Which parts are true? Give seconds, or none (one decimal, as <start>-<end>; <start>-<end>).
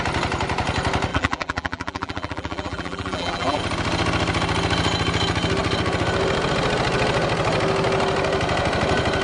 0.0-1.1; 3.6-9.2